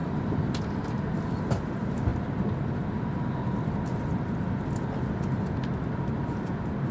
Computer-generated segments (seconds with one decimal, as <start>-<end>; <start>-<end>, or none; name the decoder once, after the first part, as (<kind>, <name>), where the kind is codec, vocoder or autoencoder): none